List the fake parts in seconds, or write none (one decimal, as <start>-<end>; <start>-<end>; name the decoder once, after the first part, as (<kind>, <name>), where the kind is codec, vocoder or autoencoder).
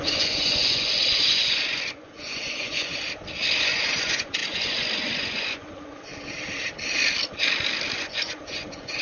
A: 0.0-2.9 (vocoder, Vocos); 3.6-6.1; 8.0-9.0